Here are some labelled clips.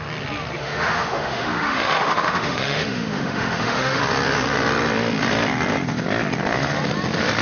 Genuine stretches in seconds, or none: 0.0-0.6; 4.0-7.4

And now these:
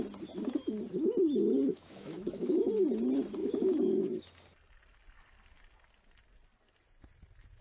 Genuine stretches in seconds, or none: 0.0-1.7; 2.7-3.4; 4.2-7.6

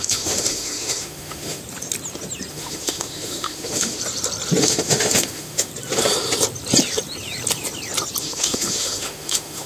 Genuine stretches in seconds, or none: 1.6-2.5; 4.0-4.6; 5.7-8.2

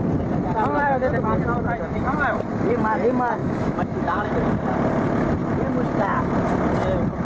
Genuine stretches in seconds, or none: 0.0-3.4; 4.3-7.2

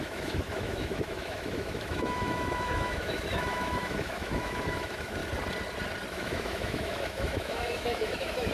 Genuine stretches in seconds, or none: 5.2-6.1

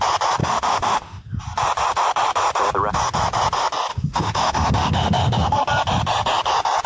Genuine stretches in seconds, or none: 0.0-0.4; 1.4-3.9; 5.6-6.9

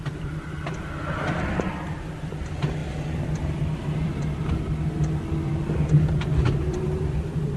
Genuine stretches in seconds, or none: 0.0-7.6

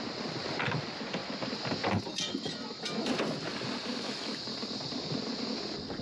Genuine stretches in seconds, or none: 0.0-3.9; 4.4-6.0